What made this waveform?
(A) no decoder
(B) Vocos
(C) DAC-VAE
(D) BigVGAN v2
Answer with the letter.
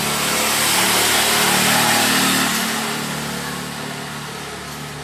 A